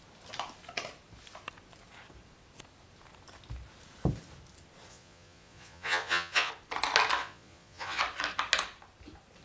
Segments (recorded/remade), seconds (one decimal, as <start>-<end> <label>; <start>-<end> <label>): 0.0-4.9 recorded; 4.9-6.5 remade; 6.5-7.2 recorded; 7.2-8.0 remade; 8.0-9.4 recorded